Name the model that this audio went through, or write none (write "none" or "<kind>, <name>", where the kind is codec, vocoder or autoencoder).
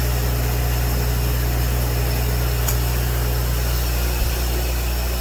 none